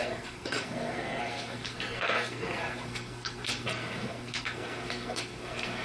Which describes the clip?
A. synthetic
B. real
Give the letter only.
A